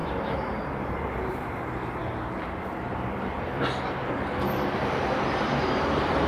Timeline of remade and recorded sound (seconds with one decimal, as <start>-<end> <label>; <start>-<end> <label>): 0.0-0.7 recorded; 0.7-2.0 remade; 2.0-2.8 recorded; 2.8-6.3 remade